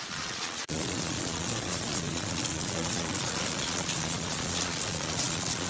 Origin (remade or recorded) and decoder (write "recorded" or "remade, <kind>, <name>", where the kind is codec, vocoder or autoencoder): remade, vocoder, Vocos